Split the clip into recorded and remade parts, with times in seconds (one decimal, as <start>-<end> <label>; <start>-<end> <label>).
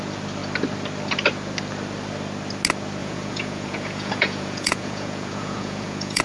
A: 0.0-3.0 recorded; 3.0-6.2 remade